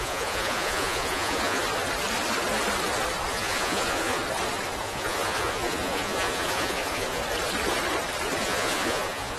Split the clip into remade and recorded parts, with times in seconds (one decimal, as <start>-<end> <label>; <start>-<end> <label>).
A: 0.0-1.6 remade; 1.6-3.3 recorded; 3.3-4.2 remade; 4.2-4.8 recorded; 4.8-7.2 remade; 7.2-8.4 recorded; 8.4-9.4 remade

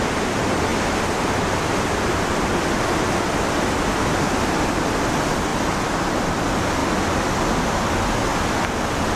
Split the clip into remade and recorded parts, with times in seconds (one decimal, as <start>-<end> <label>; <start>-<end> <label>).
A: 0.0-9.2 recorded

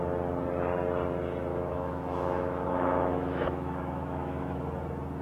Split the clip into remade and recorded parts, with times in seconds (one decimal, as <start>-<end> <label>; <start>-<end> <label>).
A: 0.0-1.5 recorded; 1.5-4.6 remade; 4.6-5.2 recorded

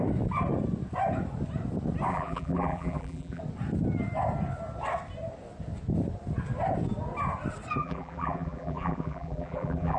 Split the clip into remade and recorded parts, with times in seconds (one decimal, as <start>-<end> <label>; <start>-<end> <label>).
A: 0.0-2.1 recorded; 2.1-3.4 remade; 3.4-7.8 recorded; 7.8-10.0 remade

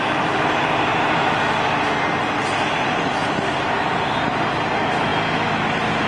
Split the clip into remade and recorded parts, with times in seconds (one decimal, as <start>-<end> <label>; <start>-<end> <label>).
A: 0.0-6.1 recorded

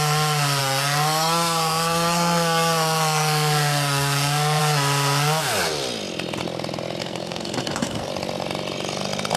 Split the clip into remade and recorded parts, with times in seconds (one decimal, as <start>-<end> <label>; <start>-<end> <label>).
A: 0.0-0.6 recorded; 0.6-4.6 remade; 4.6-7.0 recorded; 7.0-8.1 remade; 8.1-9.4 recorded

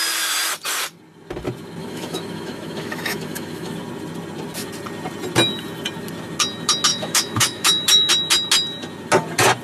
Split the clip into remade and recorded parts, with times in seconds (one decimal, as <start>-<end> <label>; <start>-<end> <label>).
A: 0.0-1.8 recorded; 1.8-3.8 remade; 3.8-6.9 recorded; 6.9-8.1 remade; 8.1-9.6 recorded

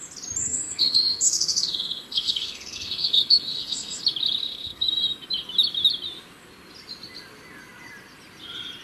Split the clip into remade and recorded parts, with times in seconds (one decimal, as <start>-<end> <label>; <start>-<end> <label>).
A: 0.0-0.4 recorded; 0.4-4.0 remade; 4.0-4.4 recorded; 4.4-4.9 remade; 4.9-8.8 recorded